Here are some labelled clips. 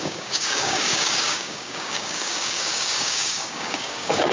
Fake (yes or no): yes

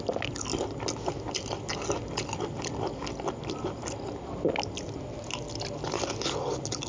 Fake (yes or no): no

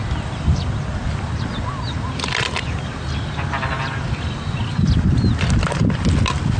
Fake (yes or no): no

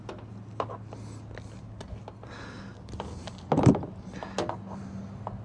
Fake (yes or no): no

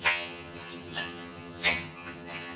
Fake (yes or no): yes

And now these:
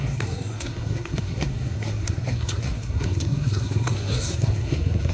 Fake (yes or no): yes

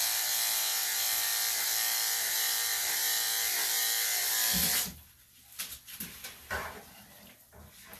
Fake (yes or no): yes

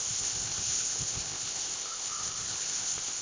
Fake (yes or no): yes